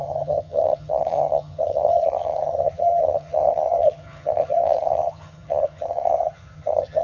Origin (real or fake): fake